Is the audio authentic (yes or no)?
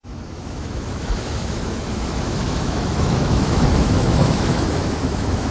no